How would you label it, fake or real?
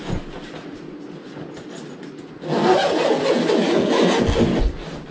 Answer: real